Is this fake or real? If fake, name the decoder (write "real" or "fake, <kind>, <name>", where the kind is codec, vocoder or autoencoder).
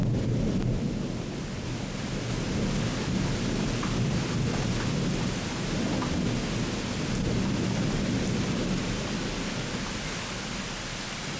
real